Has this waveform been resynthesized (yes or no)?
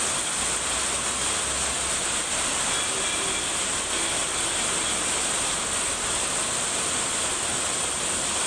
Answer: no